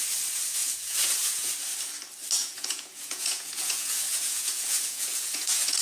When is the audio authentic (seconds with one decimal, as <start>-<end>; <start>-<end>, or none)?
0.0-0.6; 1.5-2.4